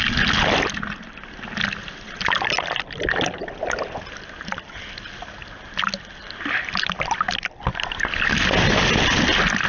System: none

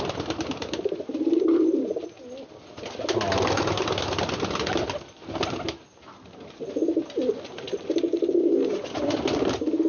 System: none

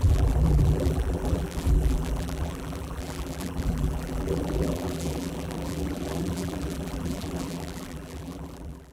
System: vocoder, BigVGAN v2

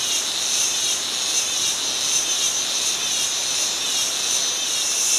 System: none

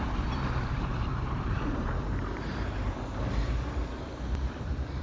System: vocoder, BigVGAN v2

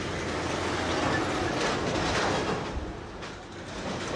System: none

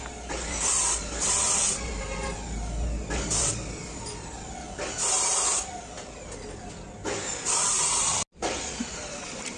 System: none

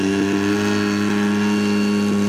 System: none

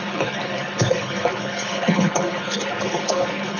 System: codec, HILCodec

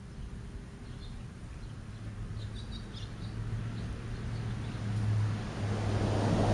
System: none